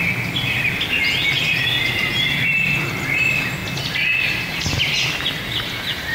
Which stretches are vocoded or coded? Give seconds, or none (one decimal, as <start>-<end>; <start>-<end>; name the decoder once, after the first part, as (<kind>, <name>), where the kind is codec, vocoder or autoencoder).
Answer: none